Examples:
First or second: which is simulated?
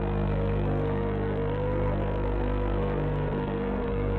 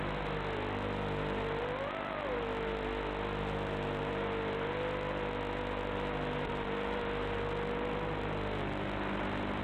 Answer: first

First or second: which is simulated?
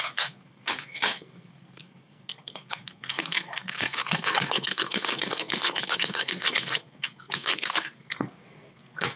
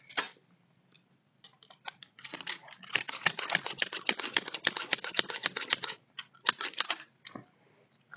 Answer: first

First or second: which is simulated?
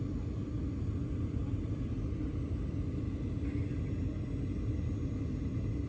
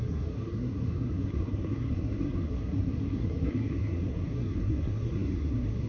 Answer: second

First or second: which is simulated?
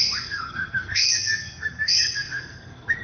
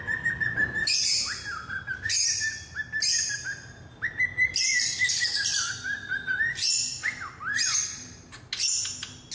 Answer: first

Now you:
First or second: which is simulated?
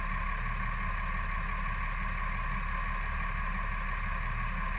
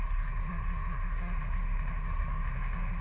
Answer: second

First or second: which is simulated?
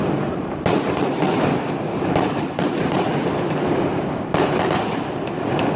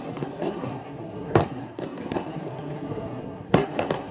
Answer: second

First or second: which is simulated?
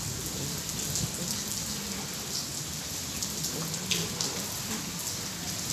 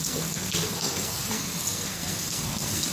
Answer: second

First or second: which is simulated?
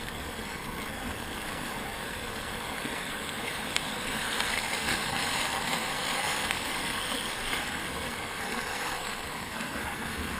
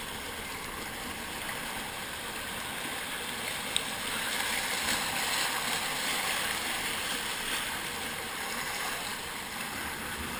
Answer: first